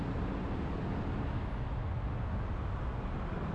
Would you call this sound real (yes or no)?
yes